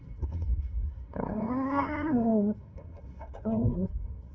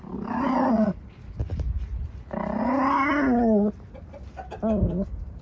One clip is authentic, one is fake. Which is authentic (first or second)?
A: second